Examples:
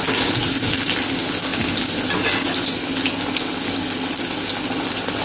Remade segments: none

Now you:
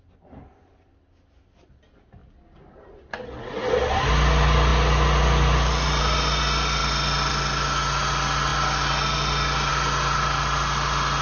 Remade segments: none